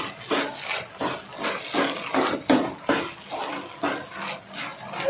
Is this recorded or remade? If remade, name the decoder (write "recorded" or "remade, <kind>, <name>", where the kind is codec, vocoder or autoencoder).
recorded